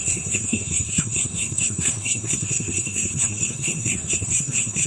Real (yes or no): no